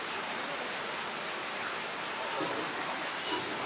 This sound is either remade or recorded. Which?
recorded